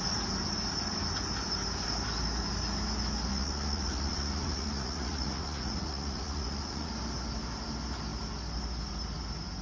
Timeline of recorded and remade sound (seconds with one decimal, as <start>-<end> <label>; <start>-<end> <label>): 0.0-3.3 recorded; 3.3-6.9 remade; 6.9-9.6 recorded